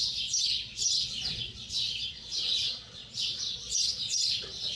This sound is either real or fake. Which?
fake